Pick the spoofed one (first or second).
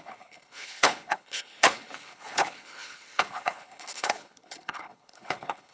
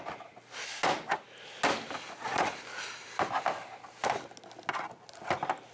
first